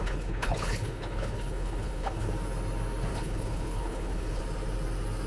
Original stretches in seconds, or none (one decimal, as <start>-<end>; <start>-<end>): 2.3-3.1; 4.4-5.3